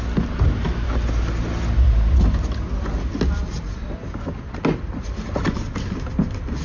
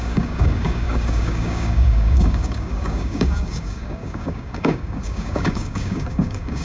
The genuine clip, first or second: first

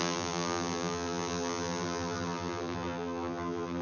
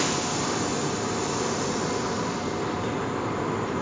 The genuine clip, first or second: second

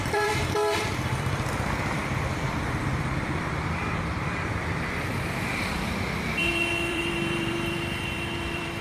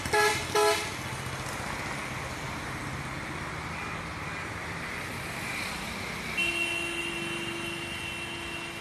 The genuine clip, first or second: second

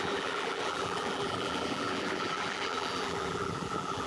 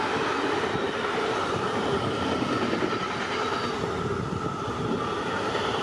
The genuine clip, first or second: second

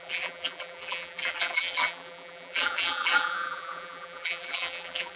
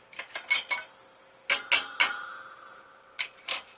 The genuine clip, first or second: second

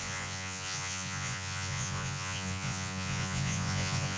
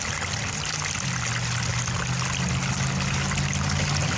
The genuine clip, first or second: second